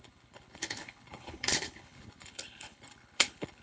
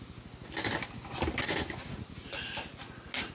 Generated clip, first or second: first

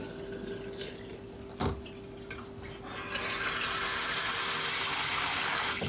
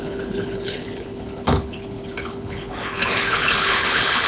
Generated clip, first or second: second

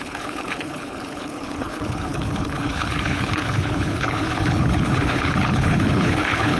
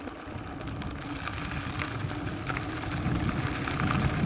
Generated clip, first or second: first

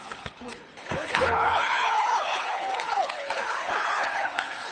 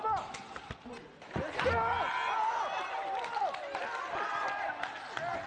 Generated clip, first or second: first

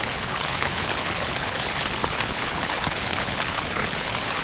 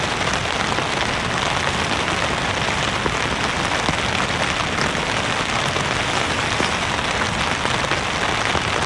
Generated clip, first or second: first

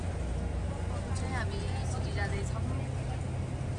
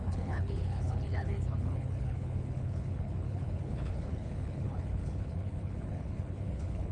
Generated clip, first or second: second